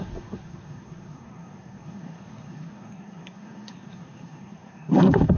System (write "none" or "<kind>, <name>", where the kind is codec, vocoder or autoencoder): codec, SNAC